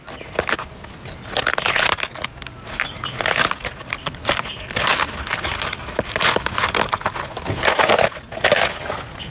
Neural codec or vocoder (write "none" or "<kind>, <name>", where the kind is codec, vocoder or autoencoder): none